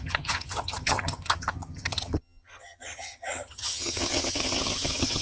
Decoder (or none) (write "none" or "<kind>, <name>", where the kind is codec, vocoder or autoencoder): vocoder, HiFi-GAN